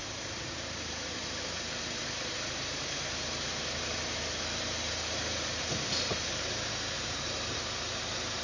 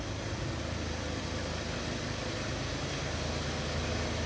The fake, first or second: first